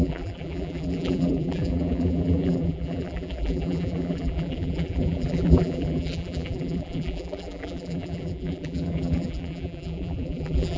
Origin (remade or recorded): remade